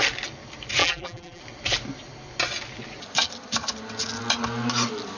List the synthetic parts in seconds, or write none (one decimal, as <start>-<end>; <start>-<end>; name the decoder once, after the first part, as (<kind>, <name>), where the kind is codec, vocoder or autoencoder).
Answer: 0.8-1.4 (vocoder, BigVGAN v2)